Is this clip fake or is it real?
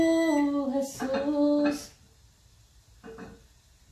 real